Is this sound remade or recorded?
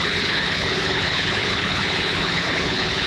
remade